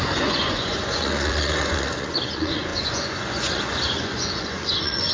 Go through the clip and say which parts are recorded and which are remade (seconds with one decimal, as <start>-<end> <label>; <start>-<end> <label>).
0.0-5.1 remade